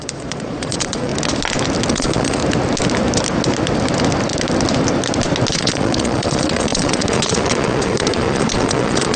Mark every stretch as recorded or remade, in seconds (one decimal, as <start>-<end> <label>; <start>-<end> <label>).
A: 0.0-1.1 remade; 1.1-1.9 recorded; 1.9-2.4 remade; 2.4-5.5 recorded; 5.5-9.2 remade